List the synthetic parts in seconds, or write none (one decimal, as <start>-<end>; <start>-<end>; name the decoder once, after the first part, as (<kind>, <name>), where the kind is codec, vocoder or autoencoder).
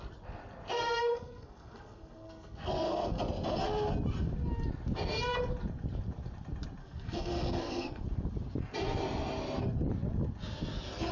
1.1-3.2 (codec, SNAC); 6.8-8.0